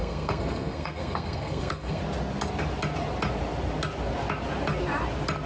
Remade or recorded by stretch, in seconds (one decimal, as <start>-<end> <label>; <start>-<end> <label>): 0.0-2.0 remade; 2.0-5.5 recorded